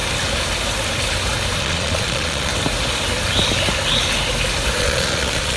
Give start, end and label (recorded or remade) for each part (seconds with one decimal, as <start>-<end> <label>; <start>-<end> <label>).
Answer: 0.0-1.6 recorded; 1.6-2.5 remade; 2.5-4.8 recorded; 4.8-5.6 remade